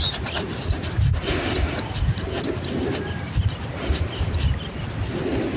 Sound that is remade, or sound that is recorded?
recorded